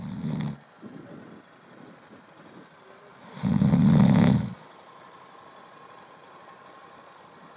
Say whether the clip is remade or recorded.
recorded